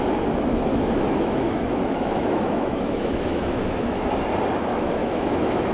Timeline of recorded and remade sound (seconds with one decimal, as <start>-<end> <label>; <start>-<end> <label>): 0.0-0.7 recorded; 0.7-4.1 remade; 4.1-4.7 recorded; 4.7-5.7 remade